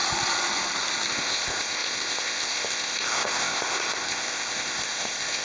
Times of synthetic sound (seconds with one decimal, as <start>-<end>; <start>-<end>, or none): 1.1-5.4